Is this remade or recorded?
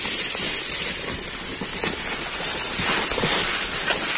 recorded